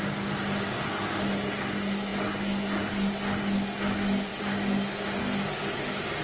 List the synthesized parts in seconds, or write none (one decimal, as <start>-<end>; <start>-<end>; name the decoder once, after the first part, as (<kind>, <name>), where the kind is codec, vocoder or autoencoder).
none